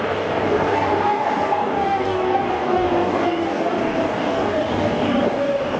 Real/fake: fake